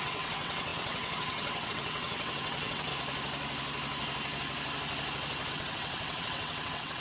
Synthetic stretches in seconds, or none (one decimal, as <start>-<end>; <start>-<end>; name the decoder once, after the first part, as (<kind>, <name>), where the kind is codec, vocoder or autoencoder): 0.0-2.9 (vocoder, WaveNeXt); 5.5-7.0